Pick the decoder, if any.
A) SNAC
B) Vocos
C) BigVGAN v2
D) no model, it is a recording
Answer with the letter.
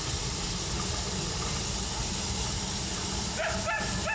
D